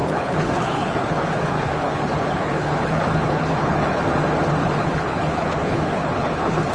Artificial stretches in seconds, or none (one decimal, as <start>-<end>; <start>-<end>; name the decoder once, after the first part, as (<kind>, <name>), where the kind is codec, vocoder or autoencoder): 0.0-4.0 (codec, HILCodec); 4.6-6.7